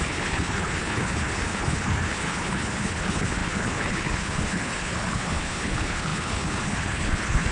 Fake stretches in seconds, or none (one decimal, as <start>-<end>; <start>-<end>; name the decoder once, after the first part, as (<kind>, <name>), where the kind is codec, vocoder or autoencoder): 0.0-7.5 (codec, HILCodec)